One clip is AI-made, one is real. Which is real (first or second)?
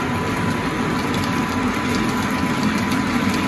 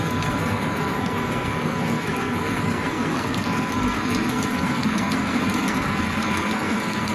first